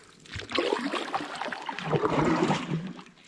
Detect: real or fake real